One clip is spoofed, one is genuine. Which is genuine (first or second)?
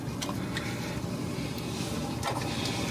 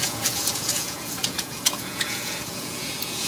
first